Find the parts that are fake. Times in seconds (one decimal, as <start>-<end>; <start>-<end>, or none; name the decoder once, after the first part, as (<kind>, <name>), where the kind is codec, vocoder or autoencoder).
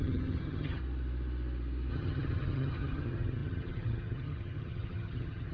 0.0-0.8 (vocoder, HiFi-GAN); 1.9-5.5